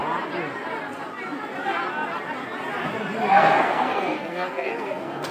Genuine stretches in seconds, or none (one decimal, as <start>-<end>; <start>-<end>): 0.0-3.3

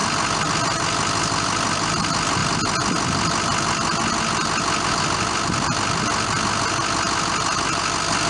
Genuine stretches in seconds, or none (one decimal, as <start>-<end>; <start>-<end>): 0.0-8.3

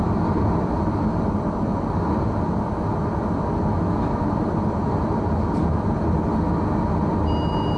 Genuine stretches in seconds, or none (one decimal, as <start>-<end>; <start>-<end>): 0.0-7.8

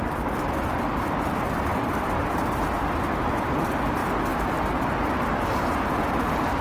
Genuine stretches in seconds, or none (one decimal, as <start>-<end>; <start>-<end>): 4.0-5.9

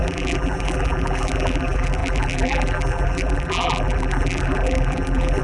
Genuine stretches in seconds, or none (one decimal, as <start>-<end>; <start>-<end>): none